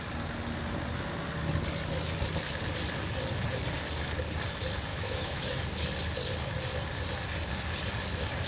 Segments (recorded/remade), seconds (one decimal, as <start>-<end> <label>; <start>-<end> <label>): 0.0-4.9 recorded; 4.9-5.6 remade; 5.6-8.5 recorded